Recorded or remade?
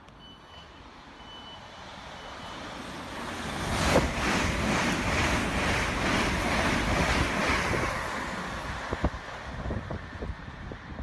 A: recorded